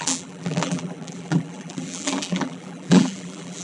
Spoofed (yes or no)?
yes